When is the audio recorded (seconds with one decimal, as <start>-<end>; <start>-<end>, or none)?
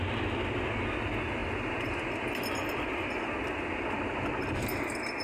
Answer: 0.0-5.2